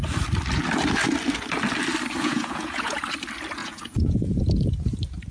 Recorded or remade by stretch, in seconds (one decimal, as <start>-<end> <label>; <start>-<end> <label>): 0.0-2.2 recorded; 2.2-3.0 remade; 3.0-3.6 recorded; 3.6-4.4 remade; 4.4-5.3 recorded